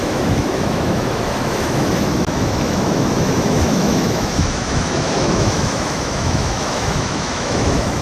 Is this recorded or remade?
remade